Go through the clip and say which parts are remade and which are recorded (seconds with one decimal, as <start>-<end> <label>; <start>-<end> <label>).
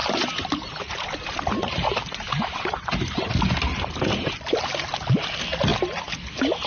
0.0-3.3 remade; 3.3-5.7 recorded; 5.7-6.7 remade